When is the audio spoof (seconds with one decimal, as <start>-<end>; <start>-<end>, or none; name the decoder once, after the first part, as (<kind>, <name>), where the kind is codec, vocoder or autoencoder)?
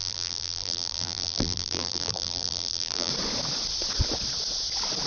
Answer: 0.0-3.1 (vocoder, BigVGAN v2)